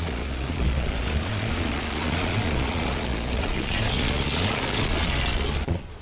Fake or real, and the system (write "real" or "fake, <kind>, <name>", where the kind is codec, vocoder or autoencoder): fake, vocoder, Vocos